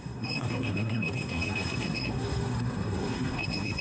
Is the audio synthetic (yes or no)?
yes